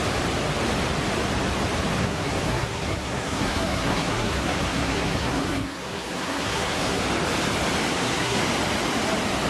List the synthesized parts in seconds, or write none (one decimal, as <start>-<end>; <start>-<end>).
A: 2.0-7.0; 7.9-8.4